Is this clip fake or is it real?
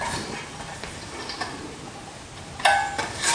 real